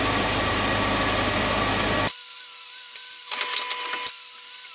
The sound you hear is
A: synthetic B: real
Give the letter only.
B